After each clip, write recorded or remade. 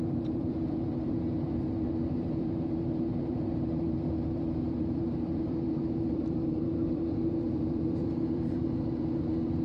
remade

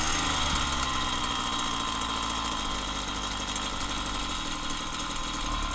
recorded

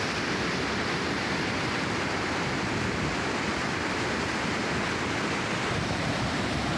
remade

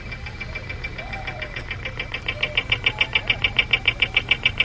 recorded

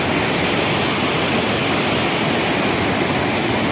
recorded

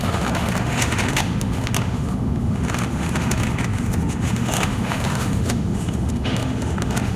remade